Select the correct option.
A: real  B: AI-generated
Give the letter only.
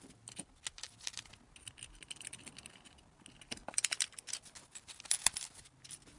A